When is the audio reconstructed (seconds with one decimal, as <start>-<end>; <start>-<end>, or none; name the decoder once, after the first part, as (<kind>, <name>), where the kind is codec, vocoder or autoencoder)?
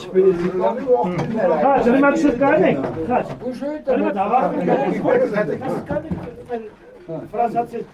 0.0-2.3 (vocoder, BigVGAN v2); 6.0-7.0